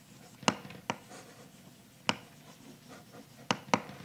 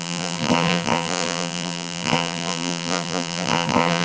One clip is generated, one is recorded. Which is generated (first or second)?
second